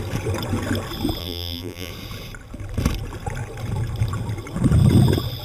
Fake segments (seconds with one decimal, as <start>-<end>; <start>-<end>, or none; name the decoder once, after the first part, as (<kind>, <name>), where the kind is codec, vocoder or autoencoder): 1.2-1.9 (vocoder, BigVGAN v2)